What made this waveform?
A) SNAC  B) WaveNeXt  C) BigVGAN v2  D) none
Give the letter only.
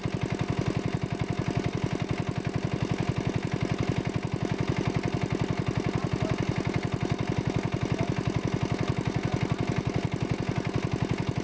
D